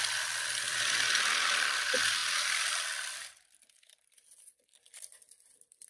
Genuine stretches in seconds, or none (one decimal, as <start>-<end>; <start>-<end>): none